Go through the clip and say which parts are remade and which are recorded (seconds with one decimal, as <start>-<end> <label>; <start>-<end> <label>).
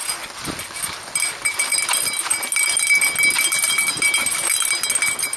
0.0-5.4 recorded